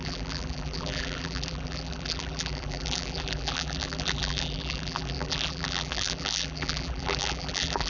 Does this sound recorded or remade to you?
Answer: remade